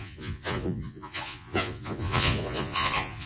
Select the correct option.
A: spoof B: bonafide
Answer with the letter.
A